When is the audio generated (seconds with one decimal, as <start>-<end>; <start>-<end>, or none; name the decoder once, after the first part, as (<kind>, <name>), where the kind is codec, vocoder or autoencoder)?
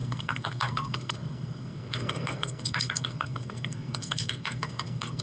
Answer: 0.0-5.2 (codec, SNAC)